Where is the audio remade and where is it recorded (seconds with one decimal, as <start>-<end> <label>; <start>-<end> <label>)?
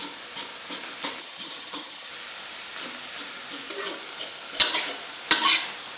0.0-1.2 recorded; 1.2-2.1 remade; 2.1-6.0 recorded